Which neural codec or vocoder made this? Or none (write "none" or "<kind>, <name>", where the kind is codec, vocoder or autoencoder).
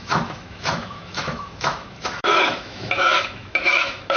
autoencoder, DAC-VAE